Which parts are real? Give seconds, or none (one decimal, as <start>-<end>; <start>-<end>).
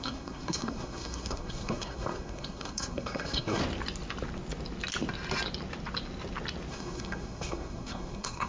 3.6-6.7